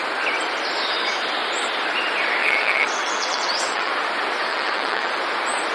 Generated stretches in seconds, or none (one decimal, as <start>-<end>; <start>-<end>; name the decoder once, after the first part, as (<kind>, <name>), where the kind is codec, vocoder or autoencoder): 2.4-3.9 (vocoder, WaveNeXt); 4.5-5.1